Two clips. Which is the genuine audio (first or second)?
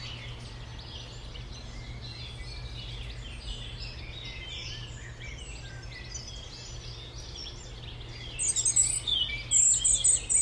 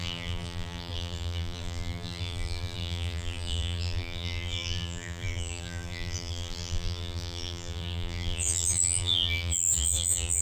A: first